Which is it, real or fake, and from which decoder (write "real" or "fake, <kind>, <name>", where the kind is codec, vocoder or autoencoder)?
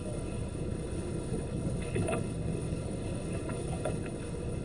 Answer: fake, codec, HILCodec